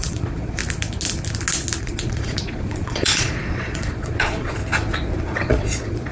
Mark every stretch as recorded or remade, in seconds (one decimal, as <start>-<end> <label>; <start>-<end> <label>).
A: 0.0-0.6 remade; 0.6-1.8 recorded; 1.8-4.6 remade; 4.6-5.2 recorded; 5.2-6.1 remade